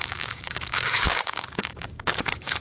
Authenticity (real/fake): fake